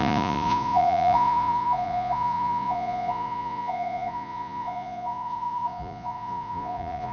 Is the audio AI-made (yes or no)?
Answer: yes